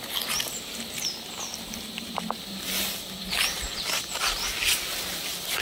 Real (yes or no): yes